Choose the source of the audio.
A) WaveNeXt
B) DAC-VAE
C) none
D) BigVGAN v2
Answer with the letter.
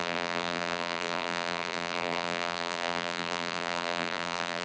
D